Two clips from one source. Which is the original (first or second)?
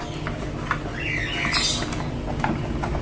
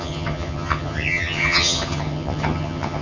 first